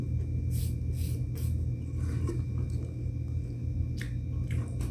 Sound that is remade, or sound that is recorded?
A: recorded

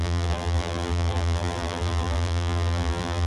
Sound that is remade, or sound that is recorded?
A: remade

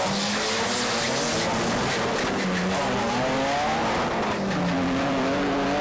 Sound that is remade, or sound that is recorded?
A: recorded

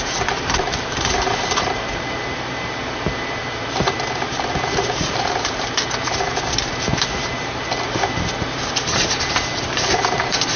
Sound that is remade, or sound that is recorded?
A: remade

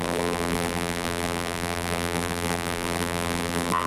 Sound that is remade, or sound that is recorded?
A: remade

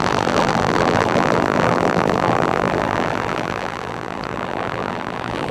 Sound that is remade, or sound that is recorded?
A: remade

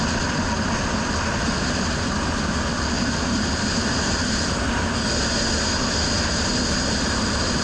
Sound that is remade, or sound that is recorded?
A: recorded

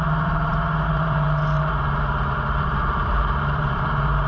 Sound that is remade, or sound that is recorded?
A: remade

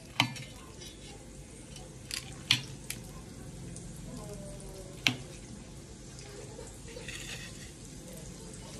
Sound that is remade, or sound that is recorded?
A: recorded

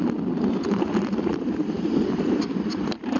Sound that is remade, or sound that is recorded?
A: recorded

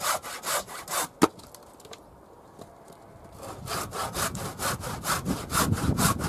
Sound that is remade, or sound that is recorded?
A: recorded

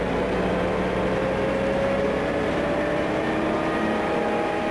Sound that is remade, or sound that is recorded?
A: recorded